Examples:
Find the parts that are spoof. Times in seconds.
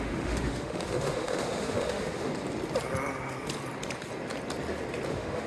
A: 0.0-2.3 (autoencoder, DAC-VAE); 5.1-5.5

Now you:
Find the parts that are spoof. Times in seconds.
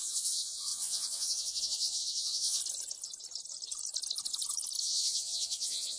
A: 0.0-2.6 (vocoder, Vocos); 4.8-6.0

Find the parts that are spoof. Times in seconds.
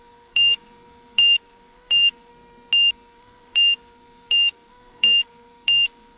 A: 0.0-2.3 (codec, SNAC); 2.9-6.2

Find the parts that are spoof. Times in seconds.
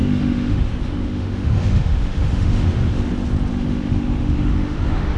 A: 0.0-3.1 (autoencoder, DAC-VAE); 3.5-5.2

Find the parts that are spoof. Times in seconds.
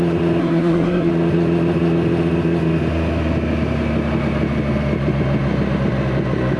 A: 0.4-1.1 (codec, SNAC)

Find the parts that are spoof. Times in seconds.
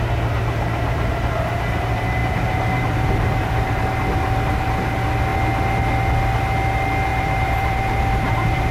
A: 2.2-3.8 (vocoder, BigVGAN v2); 7.1-8.7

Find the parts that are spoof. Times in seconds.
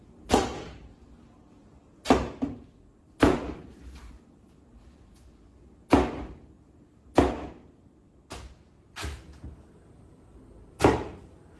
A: none